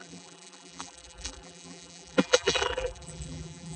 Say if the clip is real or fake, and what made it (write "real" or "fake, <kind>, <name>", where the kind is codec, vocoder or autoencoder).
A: fake, vocoder, BigVGAN v2